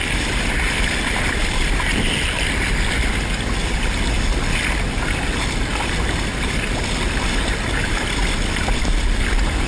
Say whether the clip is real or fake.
real